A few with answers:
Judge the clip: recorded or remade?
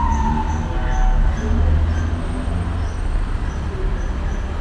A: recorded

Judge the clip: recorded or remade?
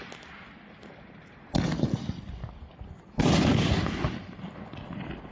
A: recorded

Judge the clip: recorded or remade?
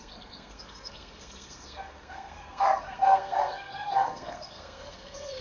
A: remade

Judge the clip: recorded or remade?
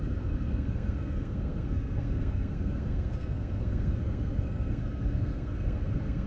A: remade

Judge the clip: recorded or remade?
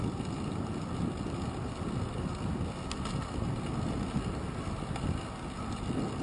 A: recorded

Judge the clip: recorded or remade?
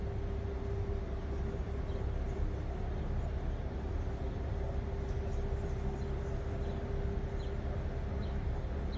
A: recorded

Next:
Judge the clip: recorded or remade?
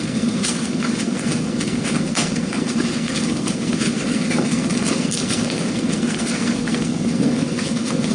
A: remade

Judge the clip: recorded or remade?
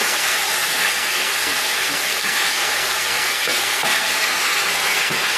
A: remade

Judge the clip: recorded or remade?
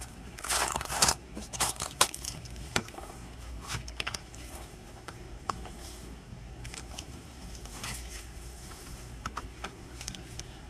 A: remade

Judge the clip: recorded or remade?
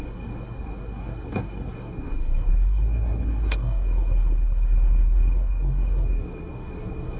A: remade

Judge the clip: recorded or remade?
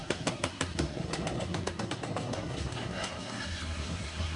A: remade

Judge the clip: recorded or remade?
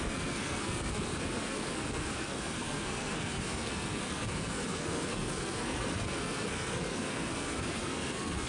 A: remade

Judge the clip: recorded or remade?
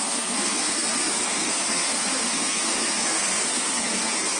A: remade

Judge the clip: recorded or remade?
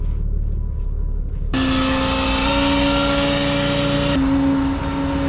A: recorded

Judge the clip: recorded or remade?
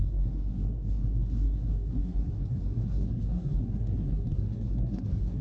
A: remade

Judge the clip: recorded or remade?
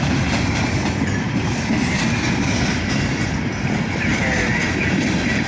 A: recorded